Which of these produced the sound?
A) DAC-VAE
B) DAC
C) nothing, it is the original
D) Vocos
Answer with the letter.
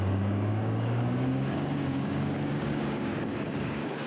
B